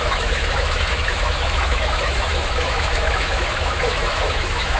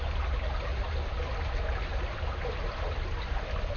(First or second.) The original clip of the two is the second